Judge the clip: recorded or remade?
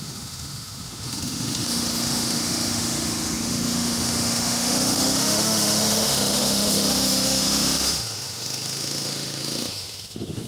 remade